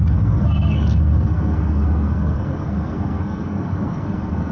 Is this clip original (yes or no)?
no